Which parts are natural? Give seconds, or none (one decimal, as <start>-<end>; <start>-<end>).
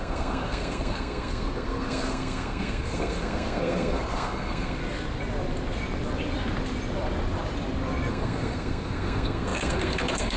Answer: 4.8-8.1